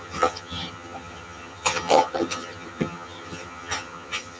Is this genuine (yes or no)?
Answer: no